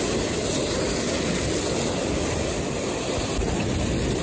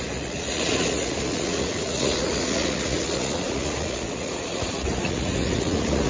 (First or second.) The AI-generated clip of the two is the second